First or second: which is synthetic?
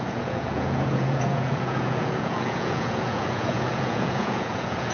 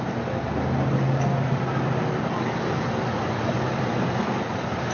first